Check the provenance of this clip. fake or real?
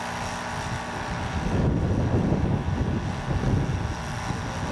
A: real